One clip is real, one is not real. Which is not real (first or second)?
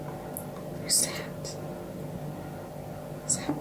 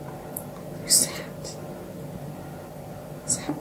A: second